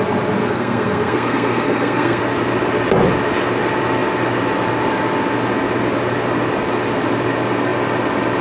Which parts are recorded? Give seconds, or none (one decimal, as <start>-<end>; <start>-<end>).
0.0-0.4; 2.2-8.4